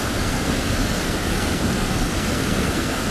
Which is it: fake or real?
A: fake